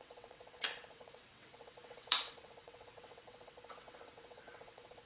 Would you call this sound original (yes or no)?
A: no